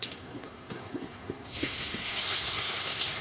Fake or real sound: fake